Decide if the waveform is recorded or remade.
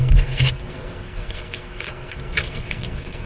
remade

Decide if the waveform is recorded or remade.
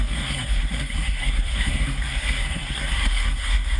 remade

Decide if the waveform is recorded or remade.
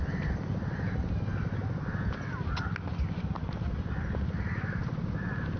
recorded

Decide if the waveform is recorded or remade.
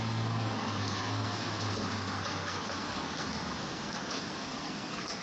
remade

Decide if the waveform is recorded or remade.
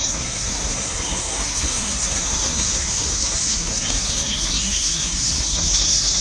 remade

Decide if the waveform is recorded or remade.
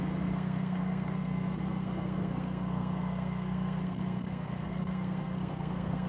remade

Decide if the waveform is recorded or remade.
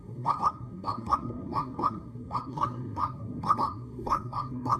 remade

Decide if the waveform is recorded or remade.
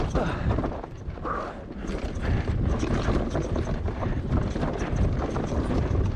recorded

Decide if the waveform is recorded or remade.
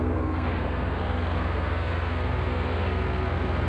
remade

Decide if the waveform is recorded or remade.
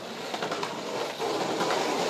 recorded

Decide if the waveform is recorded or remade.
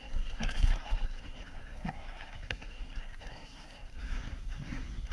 remade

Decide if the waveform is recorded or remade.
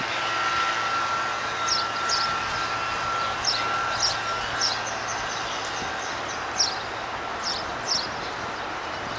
recorded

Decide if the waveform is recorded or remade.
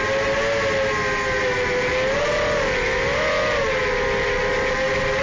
recorded